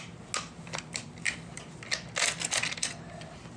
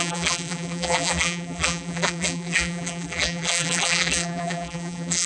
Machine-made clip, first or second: second